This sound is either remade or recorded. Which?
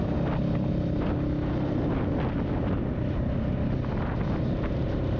recorded